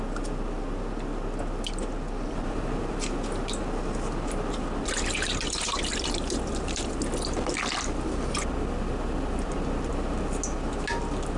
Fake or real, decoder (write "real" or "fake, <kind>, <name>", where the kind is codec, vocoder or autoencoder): real